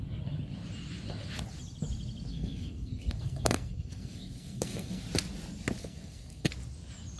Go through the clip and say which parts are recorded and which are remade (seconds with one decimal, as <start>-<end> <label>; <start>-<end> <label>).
0.0-2.3 recorded; 2.3-5.0 remade; 5.0-5.8 recorded; 5.8-6.5 remade; 6.5-7.2 recorded